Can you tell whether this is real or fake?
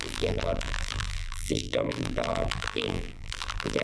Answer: fake